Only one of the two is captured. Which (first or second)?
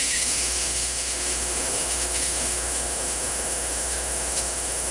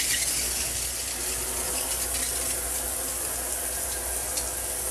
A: second